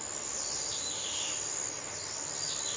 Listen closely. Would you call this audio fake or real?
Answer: real